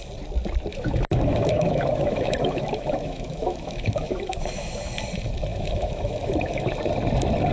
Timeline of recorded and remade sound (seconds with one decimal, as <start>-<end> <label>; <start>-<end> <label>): 0.0-0.7 recorded; 0.7-4.9 remade; 4.9-5.5 recorded; 5.5-6.7 remade; 6.7-7.5 recorded